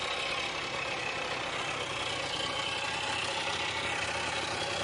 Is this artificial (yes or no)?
no